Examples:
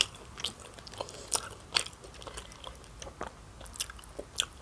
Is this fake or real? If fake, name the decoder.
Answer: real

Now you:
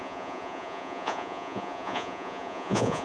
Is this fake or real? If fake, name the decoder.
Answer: fake, vocoder, Vocos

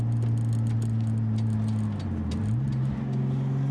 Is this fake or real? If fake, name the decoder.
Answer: real